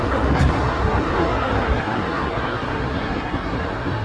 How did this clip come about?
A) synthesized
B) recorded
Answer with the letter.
A